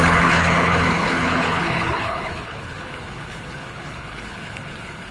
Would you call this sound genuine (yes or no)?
no